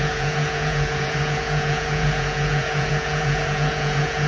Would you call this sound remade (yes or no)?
yes